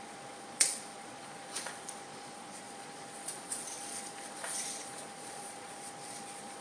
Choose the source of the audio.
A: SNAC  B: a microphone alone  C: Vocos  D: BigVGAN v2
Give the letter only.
C